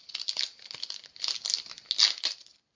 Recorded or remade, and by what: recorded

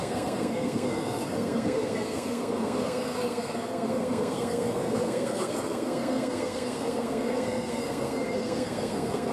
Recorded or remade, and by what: remade, codec, SNAC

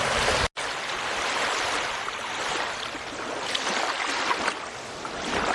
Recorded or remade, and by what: recorded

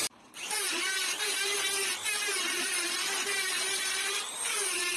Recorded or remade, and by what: remade, vocoder, BigVGAN v2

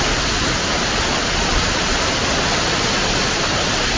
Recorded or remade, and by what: recorded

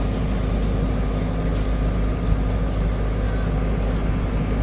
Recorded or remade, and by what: recorded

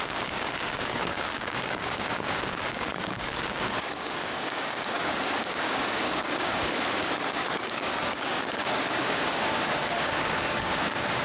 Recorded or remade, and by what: remade, codec, DAC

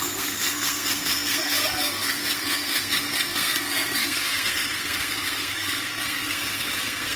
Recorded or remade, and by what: remade, codec, SNAC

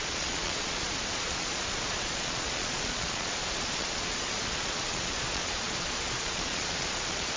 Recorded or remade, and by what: remade, vocoder, Vocos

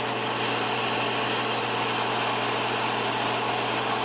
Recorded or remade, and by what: recorded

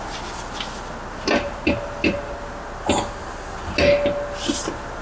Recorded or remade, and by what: recorded